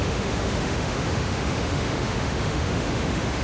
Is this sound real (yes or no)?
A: no